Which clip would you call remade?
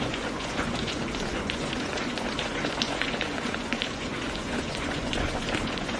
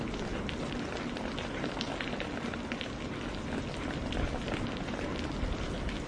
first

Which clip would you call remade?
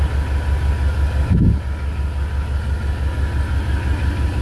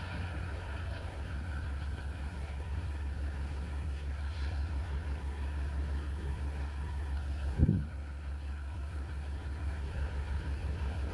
second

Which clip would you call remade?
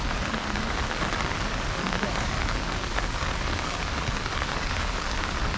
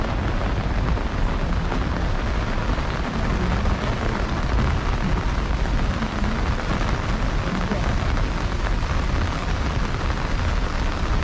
first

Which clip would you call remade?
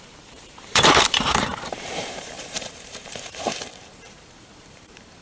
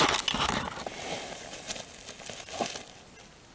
first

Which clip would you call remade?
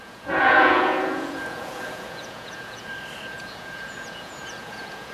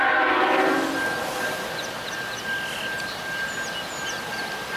first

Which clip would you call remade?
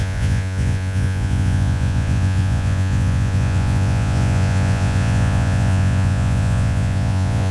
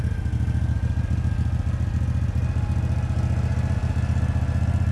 first